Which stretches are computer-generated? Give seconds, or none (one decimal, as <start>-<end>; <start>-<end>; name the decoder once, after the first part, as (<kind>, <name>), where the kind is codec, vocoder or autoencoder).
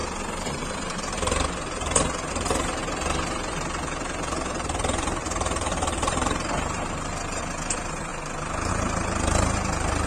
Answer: 0.0-8.1 (vocoder, BigVGAN v2); 8.7-10.1